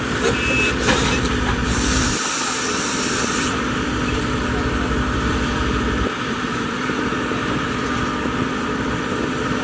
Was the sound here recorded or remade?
remade